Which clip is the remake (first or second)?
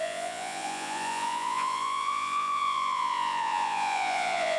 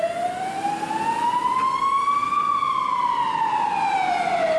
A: first